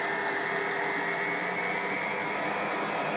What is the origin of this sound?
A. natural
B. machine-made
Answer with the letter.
A